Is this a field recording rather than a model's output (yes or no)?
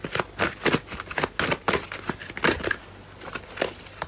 yes